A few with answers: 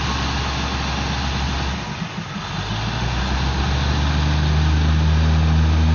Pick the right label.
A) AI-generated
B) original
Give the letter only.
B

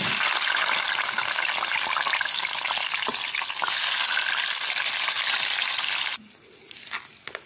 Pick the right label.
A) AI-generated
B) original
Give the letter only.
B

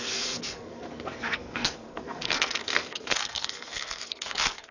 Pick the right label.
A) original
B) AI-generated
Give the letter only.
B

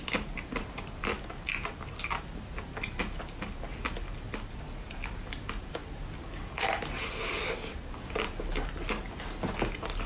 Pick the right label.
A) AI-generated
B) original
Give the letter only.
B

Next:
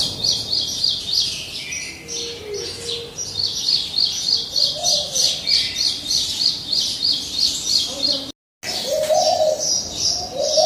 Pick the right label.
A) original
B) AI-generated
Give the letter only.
A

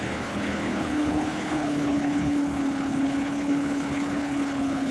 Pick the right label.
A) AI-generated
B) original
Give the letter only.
A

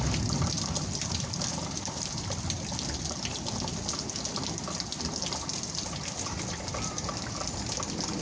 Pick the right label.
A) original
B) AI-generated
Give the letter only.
A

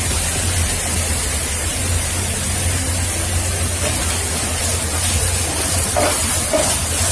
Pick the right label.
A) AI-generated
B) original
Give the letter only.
B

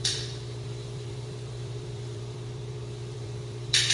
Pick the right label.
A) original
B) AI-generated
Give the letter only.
B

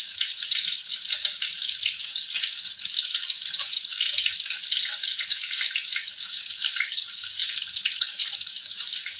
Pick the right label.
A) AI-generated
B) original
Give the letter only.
A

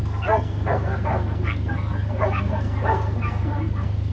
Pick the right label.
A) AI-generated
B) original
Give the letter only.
A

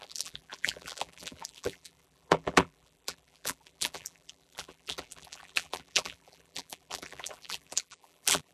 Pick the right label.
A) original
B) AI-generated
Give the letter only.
B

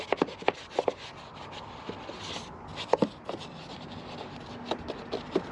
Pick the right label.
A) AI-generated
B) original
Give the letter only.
B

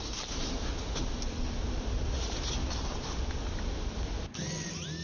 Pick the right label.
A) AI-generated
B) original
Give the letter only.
B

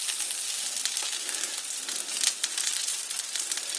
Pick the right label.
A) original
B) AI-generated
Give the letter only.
A